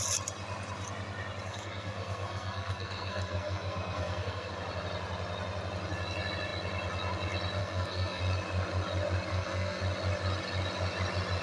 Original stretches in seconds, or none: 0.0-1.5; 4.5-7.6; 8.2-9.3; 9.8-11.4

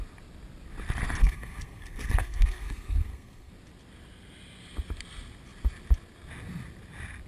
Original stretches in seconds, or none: 0.0-1.2; 3.5-7.3

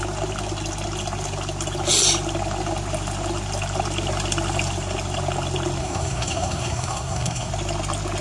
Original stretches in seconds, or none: 0.0-5.8; 7.5-8.2